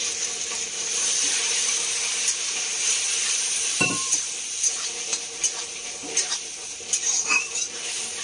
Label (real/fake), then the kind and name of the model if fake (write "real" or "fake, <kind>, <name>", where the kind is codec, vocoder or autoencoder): fake, vocoder, BigVGAN v2